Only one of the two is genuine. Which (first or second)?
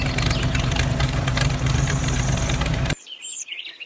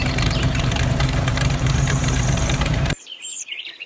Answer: first